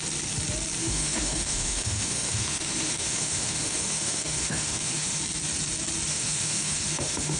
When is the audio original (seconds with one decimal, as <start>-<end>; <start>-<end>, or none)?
0.0-0.8; 5.2-6.1

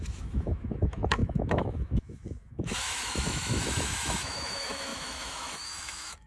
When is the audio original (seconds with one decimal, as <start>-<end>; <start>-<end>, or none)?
none

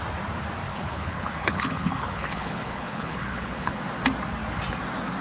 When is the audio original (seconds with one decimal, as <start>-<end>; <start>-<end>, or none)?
0.0-0.7; 3.8-5.2